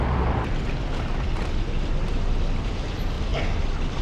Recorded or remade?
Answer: recorded